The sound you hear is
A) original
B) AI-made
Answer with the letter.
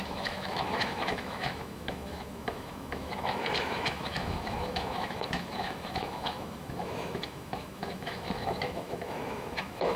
B